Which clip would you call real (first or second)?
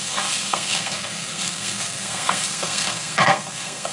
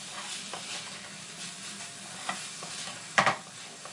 second